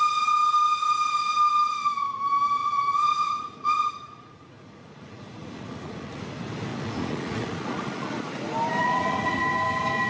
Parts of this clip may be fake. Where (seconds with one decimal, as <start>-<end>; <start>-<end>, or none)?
2.6-6.2; 6.7-8.1; 8.8-9.4